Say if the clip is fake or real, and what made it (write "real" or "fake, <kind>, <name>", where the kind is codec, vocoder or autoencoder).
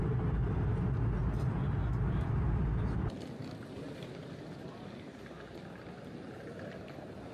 real